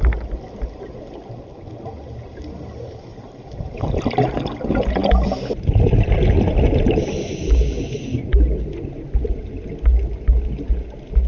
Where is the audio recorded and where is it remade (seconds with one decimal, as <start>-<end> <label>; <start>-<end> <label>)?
0.0-3.1 recorded; 3.1-4.0 remade; 4.0-11.3 recorded